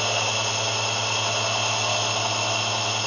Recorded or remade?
recorded